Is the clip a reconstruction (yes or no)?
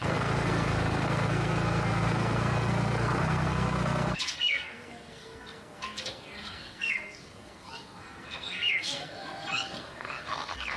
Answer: yes